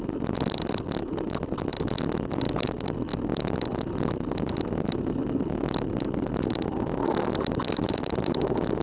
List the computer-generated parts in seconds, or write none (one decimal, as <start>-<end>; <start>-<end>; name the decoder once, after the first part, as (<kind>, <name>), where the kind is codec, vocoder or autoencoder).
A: none